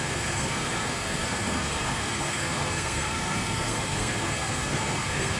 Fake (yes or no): yes